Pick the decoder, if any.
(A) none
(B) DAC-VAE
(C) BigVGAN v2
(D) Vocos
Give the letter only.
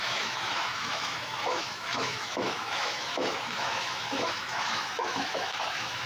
B